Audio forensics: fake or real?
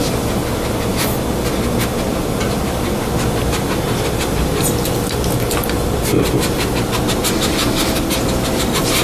real